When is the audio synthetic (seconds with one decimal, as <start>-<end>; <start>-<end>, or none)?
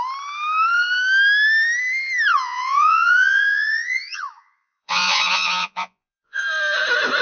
2.3-6.4